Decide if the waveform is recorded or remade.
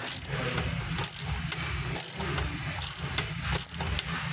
recorded